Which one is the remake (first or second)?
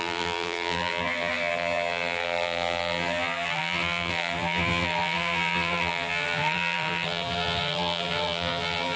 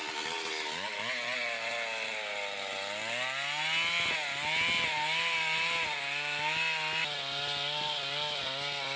first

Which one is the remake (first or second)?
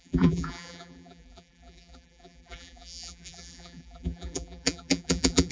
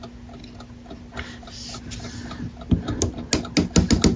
first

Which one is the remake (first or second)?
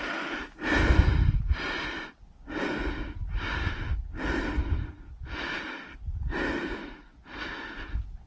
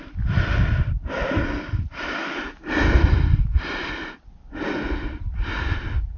second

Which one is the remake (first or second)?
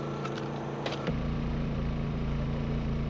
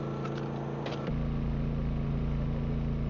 first